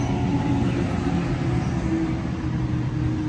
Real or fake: real